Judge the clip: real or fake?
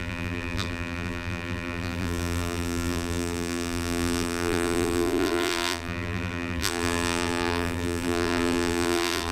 fake